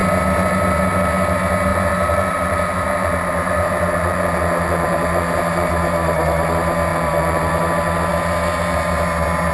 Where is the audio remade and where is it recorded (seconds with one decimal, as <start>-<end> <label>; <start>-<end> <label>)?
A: 0.0-1.7 recorded; 1.7-5.7 remade; 5.7-6.9 recorded; 6.9-7.5 remade; 7.5-9.5 recorded